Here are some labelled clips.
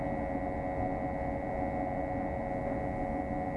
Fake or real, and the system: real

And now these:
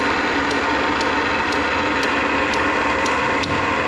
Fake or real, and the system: real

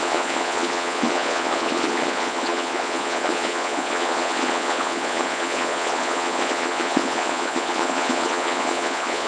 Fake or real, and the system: fake, vocoder, Vocos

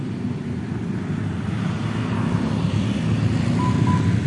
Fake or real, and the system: real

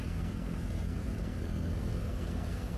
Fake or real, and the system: fake, codec, SNAC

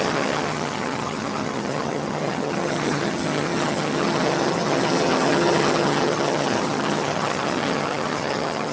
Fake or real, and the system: fake, vocoder, HiFi-GAN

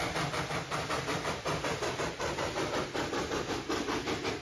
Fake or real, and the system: real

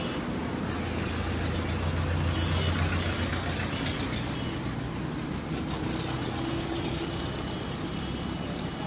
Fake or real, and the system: real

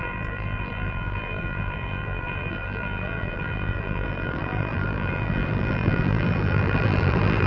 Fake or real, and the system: fake, vocoder, BigVGAN v2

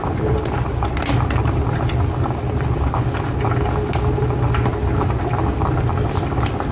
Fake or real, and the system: real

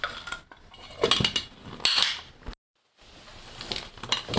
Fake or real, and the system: real